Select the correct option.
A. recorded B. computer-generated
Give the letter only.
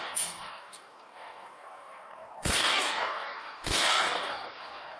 B